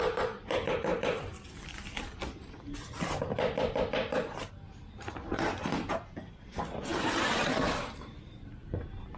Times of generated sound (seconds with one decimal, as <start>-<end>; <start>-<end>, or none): 0.0-6.9; 7.6-9.2